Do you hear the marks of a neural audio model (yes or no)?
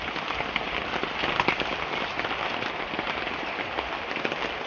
no